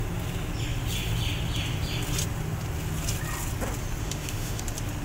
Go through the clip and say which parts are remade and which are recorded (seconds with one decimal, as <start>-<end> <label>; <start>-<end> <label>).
0.0-4.0 recorded; 4.0-4.6 remade; 4.6-5.0 recorded